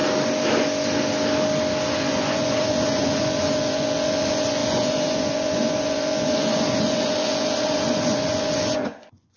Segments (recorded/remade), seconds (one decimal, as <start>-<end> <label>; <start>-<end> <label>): 0.0-1.9 recorded; 1.9-9.4 remade